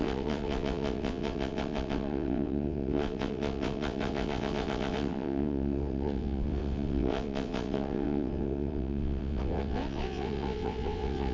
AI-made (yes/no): yes